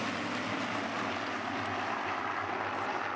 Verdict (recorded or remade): recorded